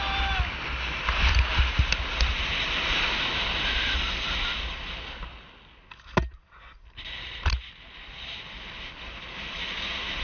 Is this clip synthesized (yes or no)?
no